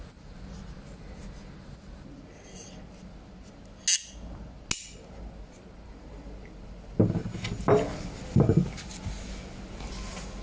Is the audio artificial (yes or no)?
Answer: no